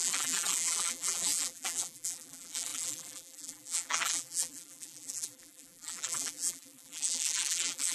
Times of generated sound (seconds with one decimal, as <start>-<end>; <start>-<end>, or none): 0.0-7.9